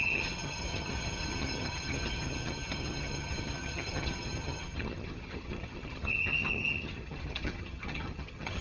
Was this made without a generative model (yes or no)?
no